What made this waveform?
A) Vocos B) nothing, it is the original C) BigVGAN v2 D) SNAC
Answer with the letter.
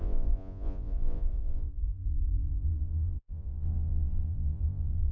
A